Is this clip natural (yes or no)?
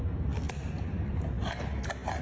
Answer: yes